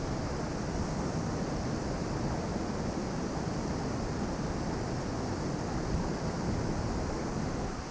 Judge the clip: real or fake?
real